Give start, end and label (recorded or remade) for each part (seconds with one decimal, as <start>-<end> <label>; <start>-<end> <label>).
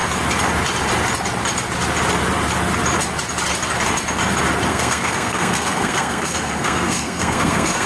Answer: 0.0-4.7 recorded; 4.7-7.9 remade